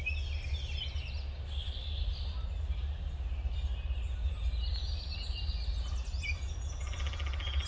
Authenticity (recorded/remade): recorded